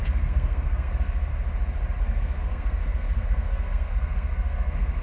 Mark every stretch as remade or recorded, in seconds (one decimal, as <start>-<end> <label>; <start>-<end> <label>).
0.0-1.3 remade; 1.3-2.0 recorded; 2.0-5.0 remade